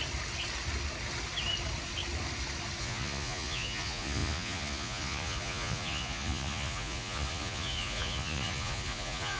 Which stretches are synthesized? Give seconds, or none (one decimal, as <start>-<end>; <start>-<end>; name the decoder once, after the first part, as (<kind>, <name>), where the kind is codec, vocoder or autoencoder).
2.8-9.4 (vocoder, Vocos)